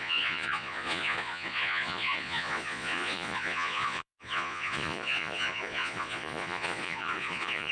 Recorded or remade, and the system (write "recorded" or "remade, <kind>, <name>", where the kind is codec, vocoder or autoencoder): remade, vocoder, Vocos